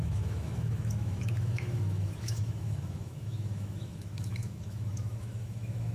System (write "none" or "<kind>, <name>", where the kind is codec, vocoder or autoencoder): autoencoder, DAC-VAE